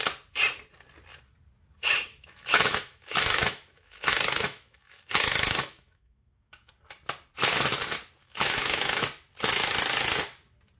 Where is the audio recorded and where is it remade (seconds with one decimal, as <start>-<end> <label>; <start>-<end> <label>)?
0.0-2.1 recorded; 2.1-6.7 remade; 6.7-8.2 recorded; 8.2-9.0 remade; 9.0-10.8 recorded